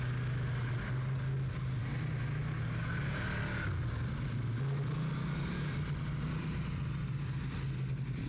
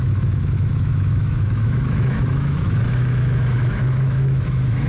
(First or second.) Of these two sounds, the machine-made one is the second